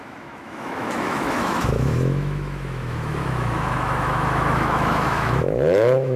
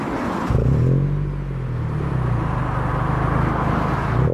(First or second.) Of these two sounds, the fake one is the first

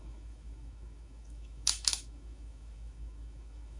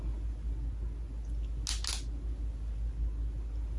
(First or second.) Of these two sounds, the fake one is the first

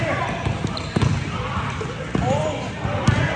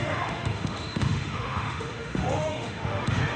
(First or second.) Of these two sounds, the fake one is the second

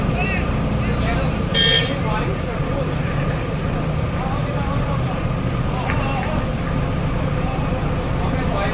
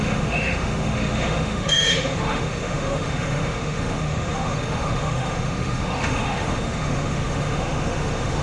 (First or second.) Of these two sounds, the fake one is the second